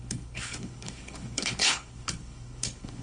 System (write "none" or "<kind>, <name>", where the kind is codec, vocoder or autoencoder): codec, HILCodec